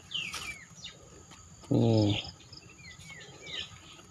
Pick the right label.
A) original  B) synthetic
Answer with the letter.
A